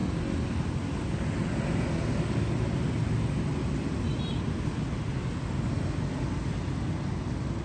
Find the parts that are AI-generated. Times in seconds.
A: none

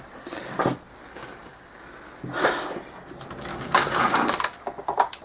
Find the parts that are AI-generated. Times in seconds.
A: 1.1-1.8 (codec, DAC); 3.5-4.4